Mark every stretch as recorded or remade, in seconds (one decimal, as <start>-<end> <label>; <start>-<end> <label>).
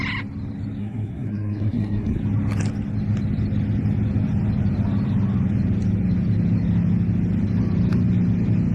0.0-0.8 recorded; 0.8-2.2 remade; 2.2-8.7 recorded